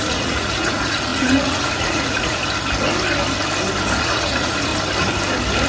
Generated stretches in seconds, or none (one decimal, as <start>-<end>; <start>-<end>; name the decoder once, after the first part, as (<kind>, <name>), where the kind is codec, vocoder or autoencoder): 0.0-2.4 (vocoder, Vocos); 4.0-4.7